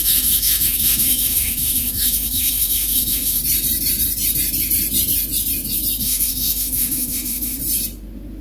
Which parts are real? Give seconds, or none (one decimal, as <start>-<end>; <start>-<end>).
3.4-6.0; 7.6-8.4